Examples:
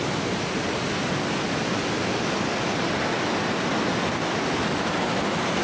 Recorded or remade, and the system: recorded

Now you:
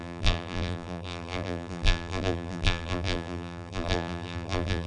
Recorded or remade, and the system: remade, vocoder, BigVGAN v2